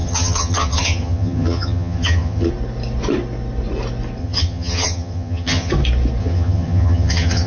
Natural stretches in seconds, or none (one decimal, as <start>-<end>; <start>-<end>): 2.5-4.2; 5.7-6.2